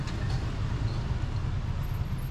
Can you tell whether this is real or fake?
real